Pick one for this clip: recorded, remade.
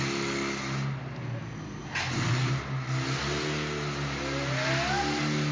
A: recorded